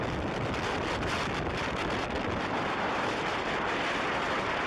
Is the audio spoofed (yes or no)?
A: no